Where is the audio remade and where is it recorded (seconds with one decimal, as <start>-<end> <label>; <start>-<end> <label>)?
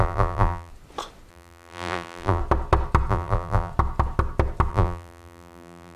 0.0-0.7 remade; 0.7-1.3 recorded; 1.3-2.4 remade; 2.4-3.1 recorded; 3.1-3.7 remade; 3.7-4.7 recorded; 4.7-6.0 remade